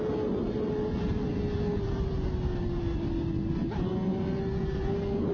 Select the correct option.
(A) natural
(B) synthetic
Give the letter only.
A